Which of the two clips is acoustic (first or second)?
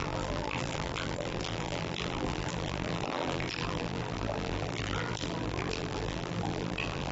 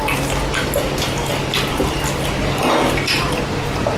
second